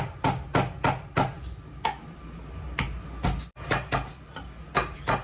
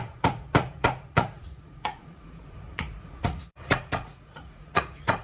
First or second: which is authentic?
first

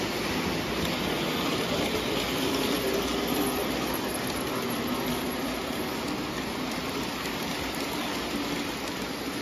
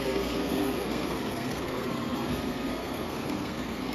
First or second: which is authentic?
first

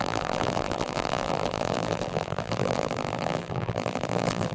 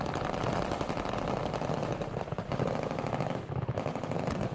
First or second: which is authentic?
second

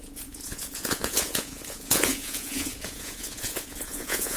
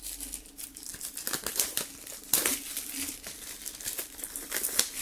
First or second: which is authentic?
second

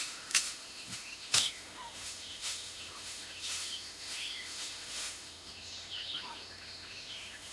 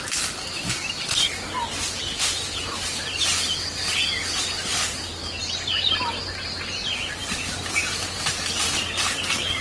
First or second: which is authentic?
second